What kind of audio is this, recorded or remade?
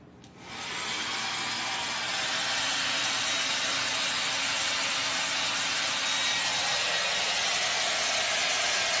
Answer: recorded